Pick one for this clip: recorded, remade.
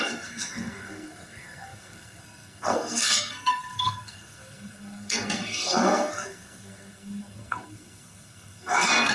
remade